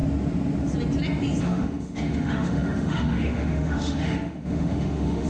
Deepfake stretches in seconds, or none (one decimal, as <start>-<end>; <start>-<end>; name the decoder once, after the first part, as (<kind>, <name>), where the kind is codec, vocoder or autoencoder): 1.4-5.3 (autoencoder, DAC-VAE)